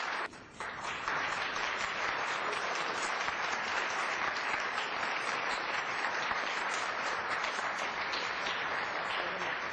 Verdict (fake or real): fake